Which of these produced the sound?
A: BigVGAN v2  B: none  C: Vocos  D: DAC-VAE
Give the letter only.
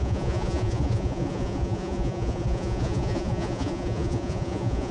C